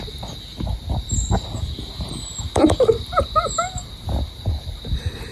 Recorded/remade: recorded